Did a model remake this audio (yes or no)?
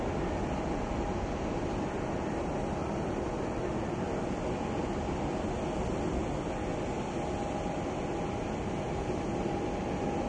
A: no